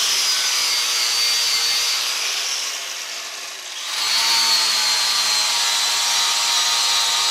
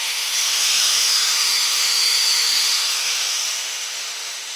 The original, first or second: first